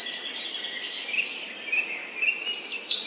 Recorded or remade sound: recorded